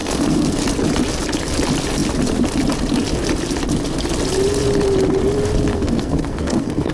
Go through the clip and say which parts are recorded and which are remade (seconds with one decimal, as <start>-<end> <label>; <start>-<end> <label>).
0.0-0.6 remade; 0.6-5.7 recorded; 5.7-6.9 remade